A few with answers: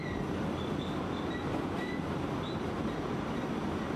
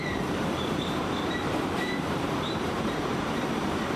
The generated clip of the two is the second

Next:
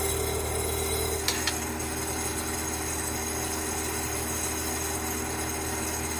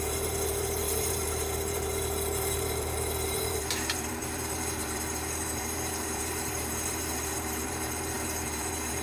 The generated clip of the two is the second